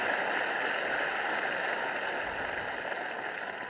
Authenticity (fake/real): real